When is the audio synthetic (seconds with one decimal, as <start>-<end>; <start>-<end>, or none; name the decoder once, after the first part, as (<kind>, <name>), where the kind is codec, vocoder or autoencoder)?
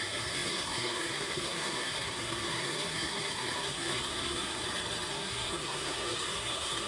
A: 0.0-4.6 (codec, SNAC); 5.1-6.9